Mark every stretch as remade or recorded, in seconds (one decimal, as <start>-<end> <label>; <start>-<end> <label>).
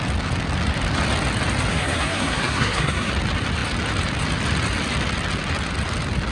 0.0-1.7 recorded; 1.7-3.1 remade; 3.1-6.3 recorded